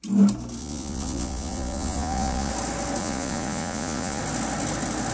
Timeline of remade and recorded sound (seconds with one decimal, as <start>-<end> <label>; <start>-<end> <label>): 0.0-0.6 recorded; 0.6-2.5 remade; 2.5-3.0 recorded; 3.0-4.2 remade; 4.2-5.1 recorded